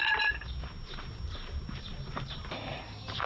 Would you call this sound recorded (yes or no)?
yes